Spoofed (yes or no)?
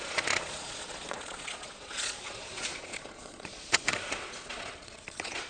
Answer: yes